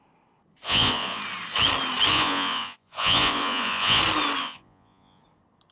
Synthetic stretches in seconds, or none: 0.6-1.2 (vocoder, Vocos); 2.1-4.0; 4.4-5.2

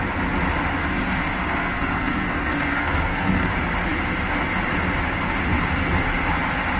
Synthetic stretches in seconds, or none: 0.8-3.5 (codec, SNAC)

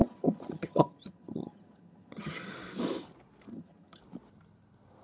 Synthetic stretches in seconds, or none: 0.0-2.5 (vocoder, HiFi-GAN); 3.5-4.0

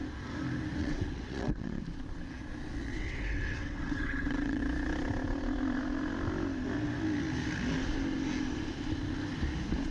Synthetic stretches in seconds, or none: 0.8-1.8 (vocoder, WaveNeXt); 2.9-4.6

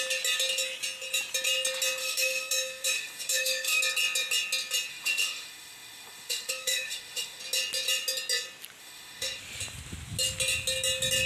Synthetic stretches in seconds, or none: 2.0-3.8 (autoencoder, DAC-VAE); 4.9-7.4; 8.8-9.4